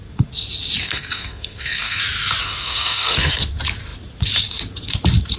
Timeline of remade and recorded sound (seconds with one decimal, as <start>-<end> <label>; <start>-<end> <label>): 0.0-0.8 recorded; 0.8-2.0 remade; 2.0-2.4 recorded; 2.4-3.3 remade; 3.3-5.4 recorded